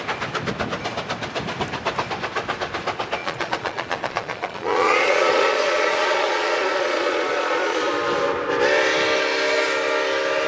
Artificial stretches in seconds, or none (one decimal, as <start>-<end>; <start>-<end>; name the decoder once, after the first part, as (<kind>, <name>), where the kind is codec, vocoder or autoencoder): 3.2-7.9 (vocoder, Vocos)